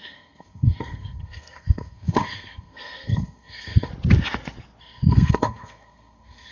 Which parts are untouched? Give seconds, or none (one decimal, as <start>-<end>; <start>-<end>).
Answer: 3.9-4.8